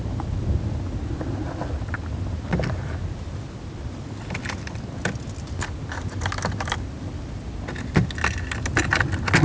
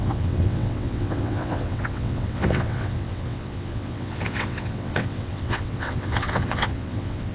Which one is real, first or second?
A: first